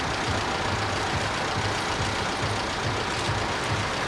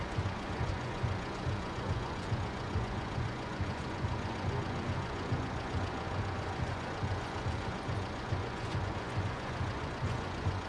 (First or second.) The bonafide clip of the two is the first